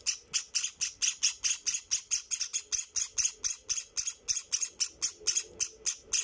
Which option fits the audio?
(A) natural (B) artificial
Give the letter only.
A